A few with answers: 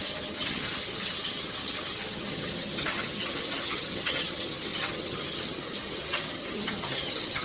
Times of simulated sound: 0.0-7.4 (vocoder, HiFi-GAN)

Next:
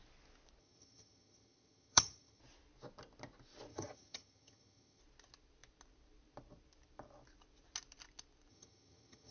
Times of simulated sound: 0.6-2.4 (vocoder, HiFi-GAN); 3.7-5.0; 8.5-9.3